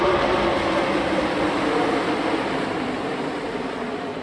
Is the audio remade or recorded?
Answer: remade